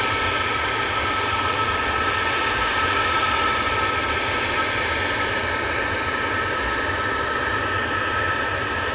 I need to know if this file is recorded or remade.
recorded